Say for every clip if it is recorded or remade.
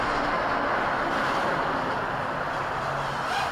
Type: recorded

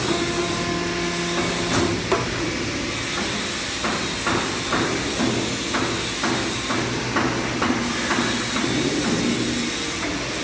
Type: recorded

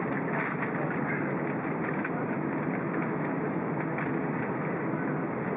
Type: recorded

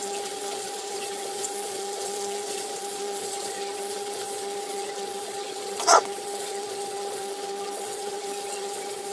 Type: remade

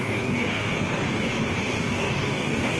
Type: remade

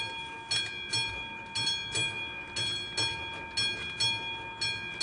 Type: recorded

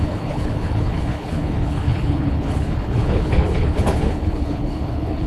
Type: remade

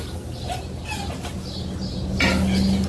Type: recorded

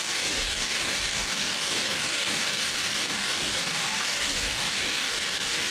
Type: remade